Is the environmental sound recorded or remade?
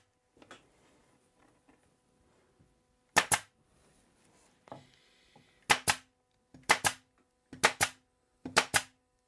recorded